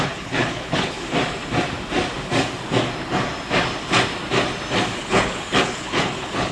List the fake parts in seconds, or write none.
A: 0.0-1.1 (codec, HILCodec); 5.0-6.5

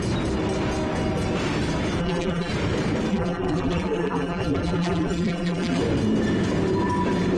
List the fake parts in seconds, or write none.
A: 2.0-2.5 (vocoder, BigVGAN v2); 3.1-5.8

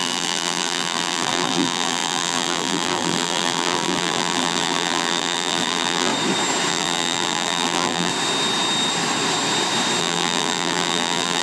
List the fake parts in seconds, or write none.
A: 0.0-6.1 (vocoder, BigVGAN v2); 6.7-8.1; 10.0-11.4